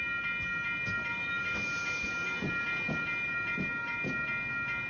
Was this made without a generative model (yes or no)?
yes